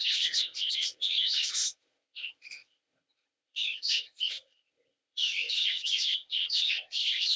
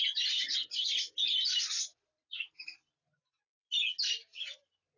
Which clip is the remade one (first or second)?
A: first